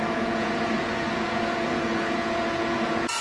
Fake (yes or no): yes